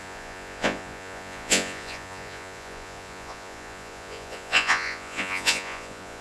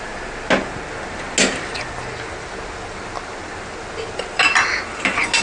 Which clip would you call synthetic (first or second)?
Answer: first